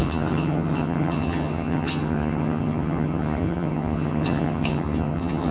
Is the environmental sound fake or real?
fake